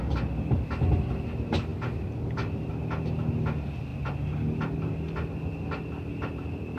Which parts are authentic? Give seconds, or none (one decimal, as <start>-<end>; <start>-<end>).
0.0-6.8